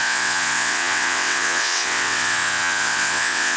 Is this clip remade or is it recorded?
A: remade